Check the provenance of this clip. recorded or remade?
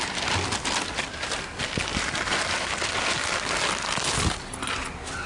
recorded